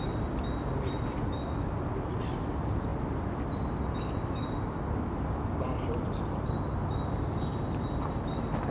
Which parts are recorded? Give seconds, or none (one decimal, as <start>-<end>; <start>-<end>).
0.0-8.7

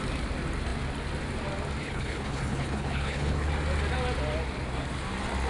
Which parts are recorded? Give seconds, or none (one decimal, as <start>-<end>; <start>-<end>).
0.0-1.8; 3.5-5.5

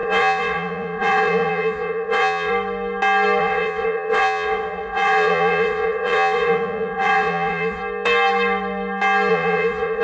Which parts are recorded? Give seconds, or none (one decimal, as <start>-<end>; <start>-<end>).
2.5-3.4; 7.8-9.3

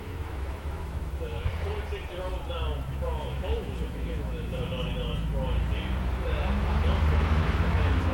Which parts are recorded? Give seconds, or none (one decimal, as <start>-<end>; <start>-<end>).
1.5-2.9; 4.7-7.1

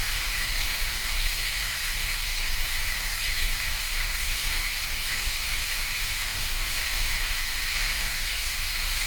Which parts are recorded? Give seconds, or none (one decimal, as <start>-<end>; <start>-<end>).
none

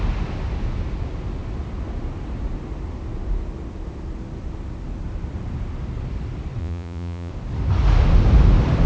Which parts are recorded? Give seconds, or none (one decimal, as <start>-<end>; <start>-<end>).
0.0-6.6; 7.3-8.9

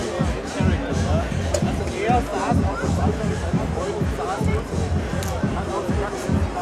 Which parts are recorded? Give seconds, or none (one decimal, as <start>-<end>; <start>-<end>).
0.0-6.6

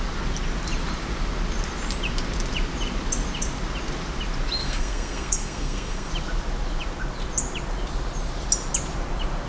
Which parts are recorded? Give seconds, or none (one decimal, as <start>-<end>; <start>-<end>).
0.0-4.6; 6.1-9.5